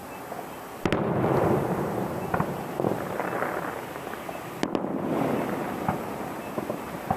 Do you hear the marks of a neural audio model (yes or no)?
no